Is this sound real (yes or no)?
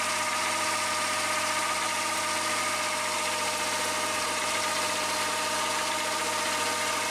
yes